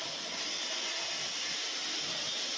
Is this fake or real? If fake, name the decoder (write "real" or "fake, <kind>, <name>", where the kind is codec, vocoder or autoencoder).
real